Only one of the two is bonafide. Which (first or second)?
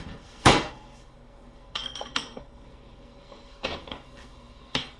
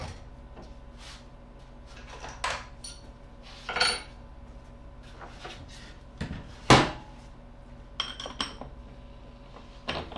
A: second